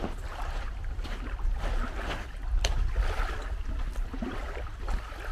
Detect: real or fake real